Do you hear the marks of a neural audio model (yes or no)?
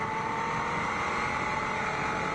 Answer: no